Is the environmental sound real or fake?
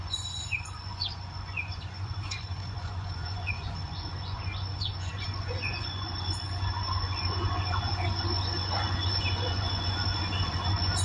fake